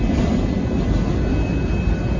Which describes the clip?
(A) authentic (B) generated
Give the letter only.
A